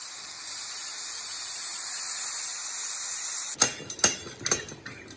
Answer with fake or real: real